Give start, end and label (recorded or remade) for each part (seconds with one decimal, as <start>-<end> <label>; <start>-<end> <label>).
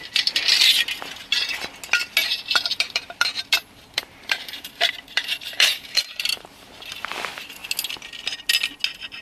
0.0-2.2 recorded; 2.2-6.7 remade; 6.7-9.2 recorded